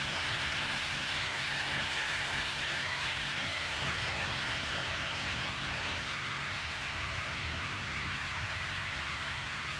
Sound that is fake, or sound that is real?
fake